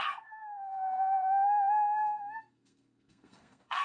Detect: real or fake fake